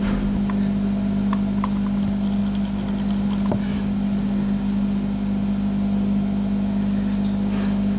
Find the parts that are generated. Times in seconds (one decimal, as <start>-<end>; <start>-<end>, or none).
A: none